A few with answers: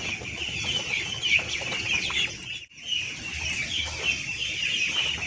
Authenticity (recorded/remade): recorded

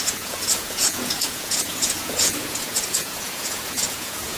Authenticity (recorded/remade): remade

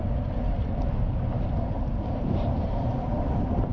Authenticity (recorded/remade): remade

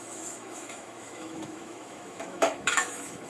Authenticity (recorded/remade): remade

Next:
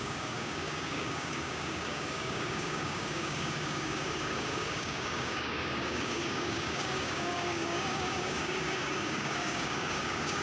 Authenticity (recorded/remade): remade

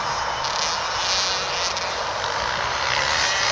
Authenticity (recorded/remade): recorded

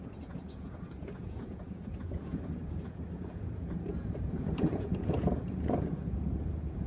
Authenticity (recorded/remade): remade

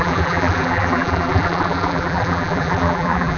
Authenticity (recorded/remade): remade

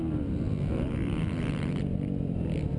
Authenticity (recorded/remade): recorded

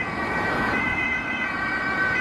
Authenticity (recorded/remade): remade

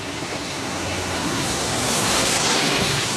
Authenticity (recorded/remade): remade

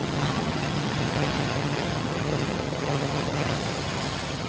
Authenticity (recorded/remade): remade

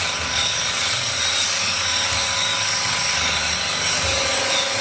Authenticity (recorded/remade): remade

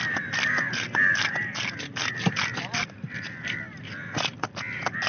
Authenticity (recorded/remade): recorded